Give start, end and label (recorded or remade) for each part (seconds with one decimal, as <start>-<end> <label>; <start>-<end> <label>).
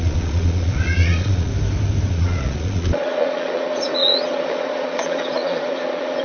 0.0-1.5 remade; 1.5-2.1 recorded; 2.1-6.2 remade